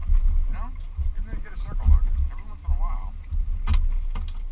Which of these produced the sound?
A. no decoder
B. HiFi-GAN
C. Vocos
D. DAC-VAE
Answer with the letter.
A